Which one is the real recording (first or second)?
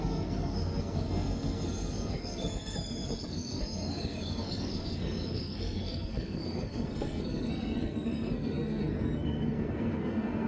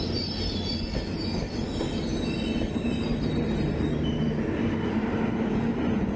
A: second